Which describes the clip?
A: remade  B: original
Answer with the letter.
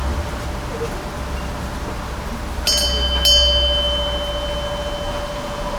B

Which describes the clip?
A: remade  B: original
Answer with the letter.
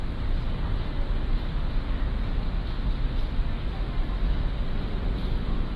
B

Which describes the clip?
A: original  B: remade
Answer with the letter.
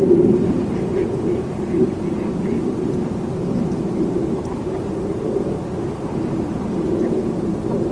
A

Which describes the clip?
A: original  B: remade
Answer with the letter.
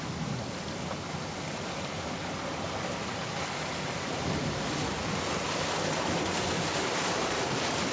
A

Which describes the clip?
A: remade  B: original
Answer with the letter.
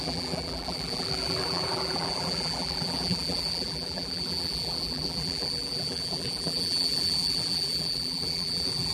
A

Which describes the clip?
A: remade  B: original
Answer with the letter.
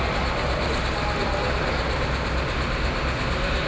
B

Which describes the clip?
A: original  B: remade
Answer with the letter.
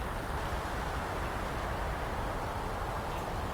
A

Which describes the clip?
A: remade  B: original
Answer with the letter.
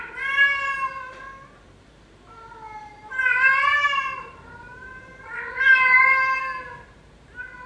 A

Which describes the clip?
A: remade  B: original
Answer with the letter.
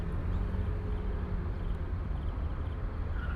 B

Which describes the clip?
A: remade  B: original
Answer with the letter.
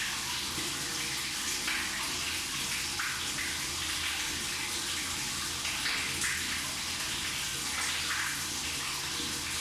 B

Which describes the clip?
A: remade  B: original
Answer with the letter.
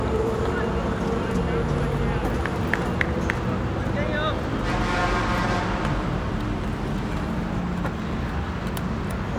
B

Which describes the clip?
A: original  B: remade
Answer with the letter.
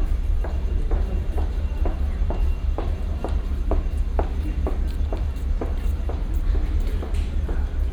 B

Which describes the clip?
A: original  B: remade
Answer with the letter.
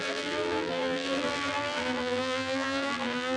B